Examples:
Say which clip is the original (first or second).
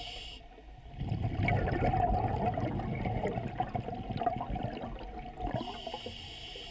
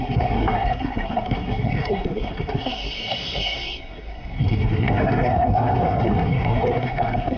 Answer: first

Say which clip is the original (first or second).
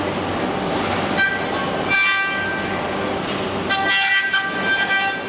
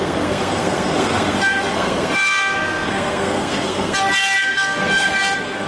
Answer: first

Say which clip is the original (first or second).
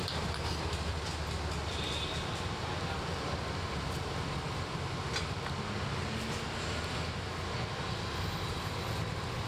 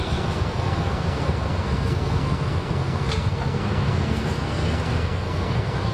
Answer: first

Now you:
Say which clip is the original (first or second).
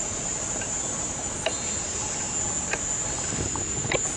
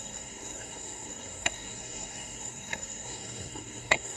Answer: first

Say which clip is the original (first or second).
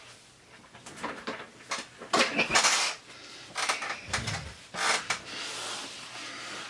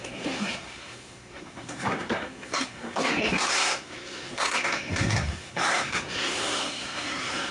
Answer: first